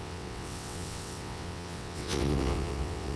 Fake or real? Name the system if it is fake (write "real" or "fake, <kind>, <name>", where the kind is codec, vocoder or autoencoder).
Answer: fake, vocoder, WaveNeXt